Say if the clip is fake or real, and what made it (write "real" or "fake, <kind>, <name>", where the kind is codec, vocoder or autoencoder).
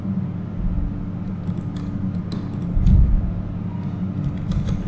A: real